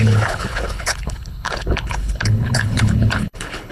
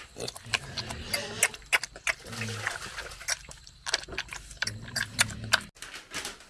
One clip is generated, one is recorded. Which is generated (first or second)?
first